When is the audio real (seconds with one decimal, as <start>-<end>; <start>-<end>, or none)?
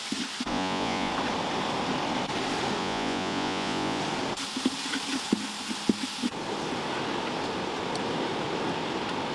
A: 0.0-0.5; 1.1-2.8; 4.0-9.3